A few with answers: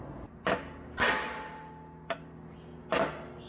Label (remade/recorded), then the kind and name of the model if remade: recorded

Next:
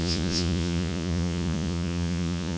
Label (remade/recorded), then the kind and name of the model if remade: remade, vocoder, Vocos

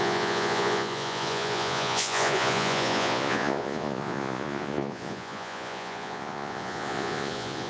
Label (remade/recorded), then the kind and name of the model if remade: remade, vocoder, Vocos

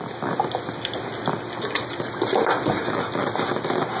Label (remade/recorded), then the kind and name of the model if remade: recorded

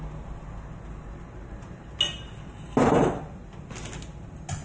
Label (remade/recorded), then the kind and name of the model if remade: recorded